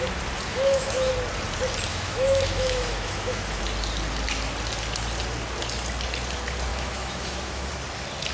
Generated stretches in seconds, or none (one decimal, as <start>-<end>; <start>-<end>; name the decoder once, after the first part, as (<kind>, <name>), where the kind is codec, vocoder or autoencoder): 0.5-1.1 (autoencoder, DAC-VAE); 1.9-3.6; 6.7-7.7